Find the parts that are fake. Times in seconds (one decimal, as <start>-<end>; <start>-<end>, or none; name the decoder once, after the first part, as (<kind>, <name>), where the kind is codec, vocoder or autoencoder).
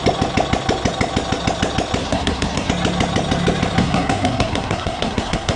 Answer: 2.0-2.7 (codec, SNAC); 3.8-5.6